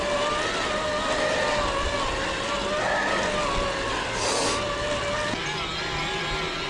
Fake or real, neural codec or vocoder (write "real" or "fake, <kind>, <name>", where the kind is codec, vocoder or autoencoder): real